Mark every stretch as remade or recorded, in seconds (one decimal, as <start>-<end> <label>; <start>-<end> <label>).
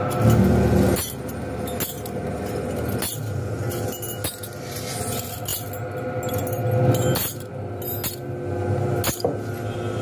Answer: 0.0-10.0 recorded